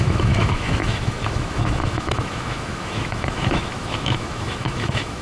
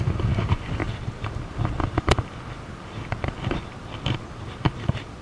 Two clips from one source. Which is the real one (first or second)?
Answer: second